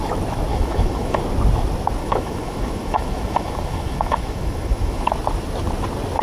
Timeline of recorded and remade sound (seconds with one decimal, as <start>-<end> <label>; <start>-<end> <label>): 0.0-0.5 recorded; 0.5-1.2 remade; 1.2-2.0 recorded; 2.0-5.1 remade; 5.1-6.2 recorded